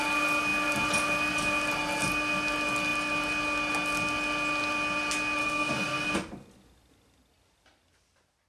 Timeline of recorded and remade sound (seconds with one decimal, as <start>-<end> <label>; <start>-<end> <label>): 0.0-5.4 recorded; 5.4-6.1 remade; 6.1-8.5 recorded